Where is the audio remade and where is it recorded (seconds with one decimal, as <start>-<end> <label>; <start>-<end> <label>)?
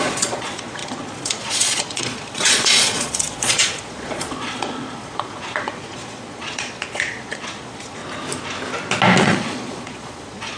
0.0-8.0 remade; 8.0-9.2 recorded; 9.2-10.6 remade